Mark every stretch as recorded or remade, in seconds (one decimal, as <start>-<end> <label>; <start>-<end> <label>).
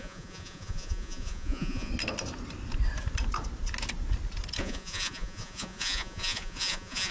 0.0-1.9 remade; 1.9-4.6 recorded; 4.6-7.1 remade